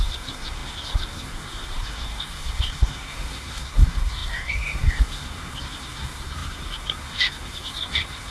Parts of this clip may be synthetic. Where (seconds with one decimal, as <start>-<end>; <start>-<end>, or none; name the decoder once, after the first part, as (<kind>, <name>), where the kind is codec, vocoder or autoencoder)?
0.0-8.3 (codec, SNAC)